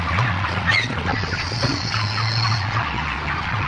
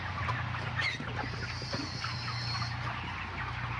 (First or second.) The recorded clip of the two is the second